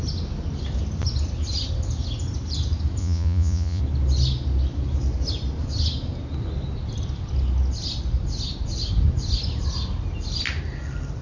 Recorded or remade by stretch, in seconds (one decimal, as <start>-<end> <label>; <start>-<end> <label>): 0.0-3.0 recorded; 3.0-3.8 remade; 3.8-11.2 recorded